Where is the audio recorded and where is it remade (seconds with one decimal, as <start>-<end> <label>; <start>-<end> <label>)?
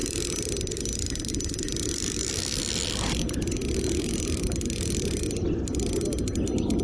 0.0-6.8 recorded